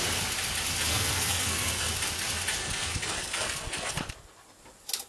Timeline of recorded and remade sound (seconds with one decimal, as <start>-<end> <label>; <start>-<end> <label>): 0.0-0.9 recorded; 0.9-1.9 remade; 1.9-2.6 recorded; 2.6-4.1 remade; 4.1-5.1 recorded